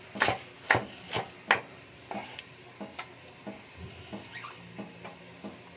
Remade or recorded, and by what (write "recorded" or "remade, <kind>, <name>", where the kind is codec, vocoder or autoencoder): recorded